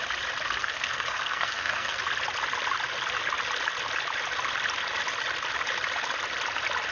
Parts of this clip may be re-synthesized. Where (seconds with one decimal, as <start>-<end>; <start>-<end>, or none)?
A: 0.6-2.0